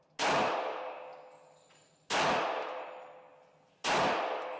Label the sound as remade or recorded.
recorded